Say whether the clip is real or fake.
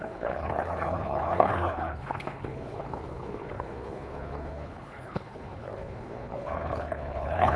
fake